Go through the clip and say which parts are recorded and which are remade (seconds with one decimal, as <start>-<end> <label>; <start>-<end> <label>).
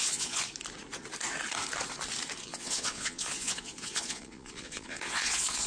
0.0-0.5 remade; 0.5-2.4 recorded; 2.4-5.7 remade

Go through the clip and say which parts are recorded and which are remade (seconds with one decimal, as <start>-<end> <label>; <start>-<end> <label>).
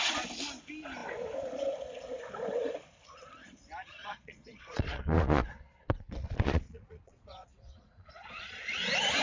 0.0-4.0 recorded; 4.0-8.4 remade; 8.4-9.2 recorded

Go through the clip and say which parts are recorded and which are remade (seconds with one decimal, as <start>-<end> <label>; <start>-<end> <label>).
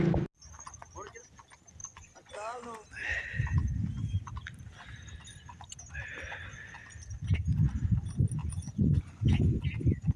0.0-1.8 recorded; 1.8-2.3 remade; 2.3-8.4 recorded; 8.4-9.2 remade; 9.2-10.2 recorded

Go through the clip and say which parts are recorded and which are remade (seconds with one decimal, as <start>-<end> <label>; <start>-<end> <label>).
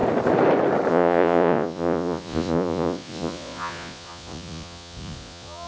0.0-0.9 recorded; 0.9-5.7 remade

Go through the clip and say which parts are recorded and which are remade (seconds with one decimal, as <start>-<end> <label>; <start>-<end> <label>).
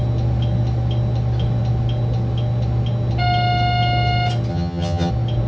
0.0-4.5 recorded; 4.5-5.1 remade; 5.1-5.5 recorded